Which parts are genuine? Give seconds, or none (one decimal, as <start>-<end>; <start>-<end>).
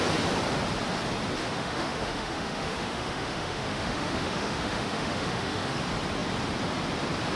0.0-1.4; 5.8-7.4